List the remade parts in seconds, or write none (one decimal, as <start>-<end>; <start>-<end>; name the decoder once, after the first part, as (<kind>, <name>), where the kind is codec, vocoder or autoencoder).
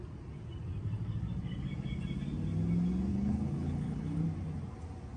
3.1-4.2 (codec, HILCodec)